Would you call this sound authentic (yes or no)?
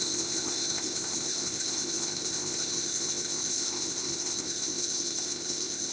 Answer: no